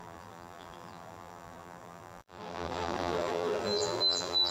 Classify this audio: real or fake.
fake